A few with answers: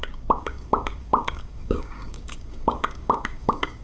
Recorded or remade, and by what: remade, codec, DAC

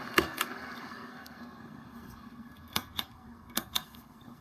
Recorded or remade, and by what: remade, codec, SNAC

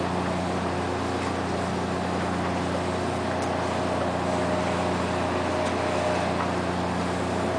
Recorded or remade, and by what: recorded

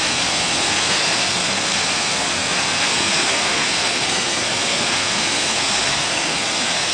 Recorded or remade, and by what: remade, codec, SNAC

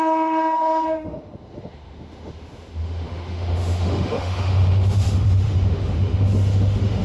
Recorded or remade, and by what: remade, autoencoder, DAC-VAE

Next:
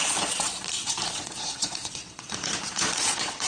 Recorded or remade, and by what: remade, vocoder, Vocos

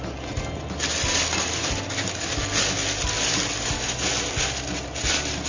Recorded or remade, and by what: recorded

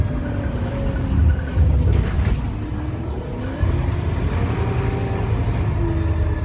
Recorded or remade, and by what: recorded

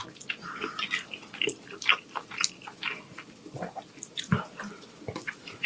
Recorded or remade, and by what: recorded